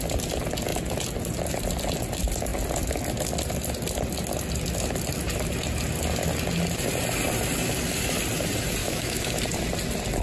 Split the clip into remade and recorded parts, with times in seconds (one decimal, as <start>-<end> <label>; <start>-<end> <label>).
0.0-8.8 recorded; 8.8-9.4 remade; 9.4-10.2 recorded